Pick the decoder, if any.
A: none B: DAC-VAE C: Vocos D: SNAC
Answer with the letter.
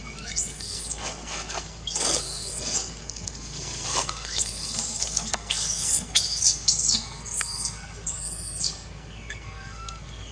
D